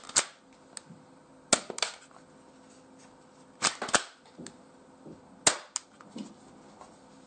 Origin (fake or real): real